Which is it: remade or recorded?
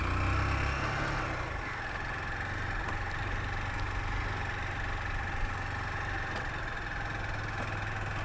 recorded